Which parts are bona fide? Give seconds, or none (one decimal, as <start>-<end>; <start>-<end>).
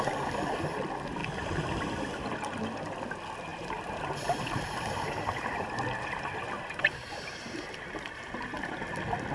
0.0-3.5; 8.2-9.3